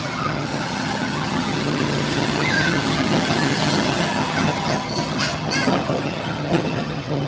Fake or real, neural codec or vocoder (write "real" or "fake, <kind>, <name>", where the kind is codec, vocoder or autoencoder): fake, vocoder, HiFi-GAN